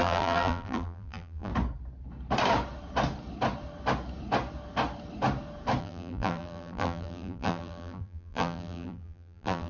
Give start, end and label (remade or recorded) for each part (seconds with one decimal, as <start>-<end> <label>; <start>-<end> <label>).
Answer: 0.0-1.5 remade; 1.5-5.8 recorded; 5.8-9.7 remade